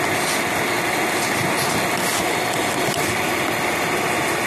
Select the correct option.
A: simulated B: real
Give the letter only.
B